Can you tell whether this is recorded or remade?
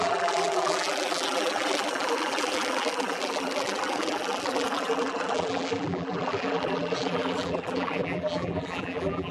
remade